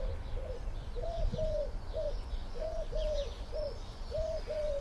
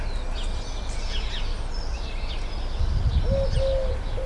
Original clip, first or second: second